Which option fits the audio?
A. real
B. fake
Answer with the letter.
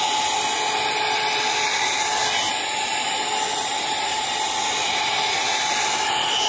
A